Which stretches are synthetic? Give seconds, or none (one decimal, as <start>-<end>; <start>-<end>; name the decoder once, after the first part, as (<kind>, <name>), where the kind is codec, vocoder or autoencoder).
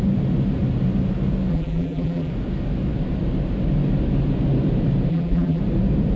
1.5-2.3 (vocoder, BigVGAN v2); 5.1-5.6